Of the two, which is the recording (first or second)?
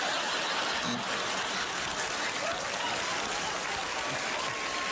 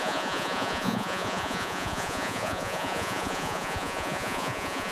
first